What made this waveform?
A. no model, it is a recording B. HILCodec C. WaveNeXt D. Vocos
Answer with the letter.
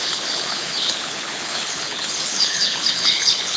B